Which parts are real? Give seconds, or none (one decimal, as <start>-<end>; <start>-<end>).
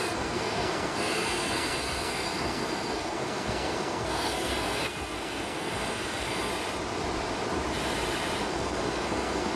6.5-8.4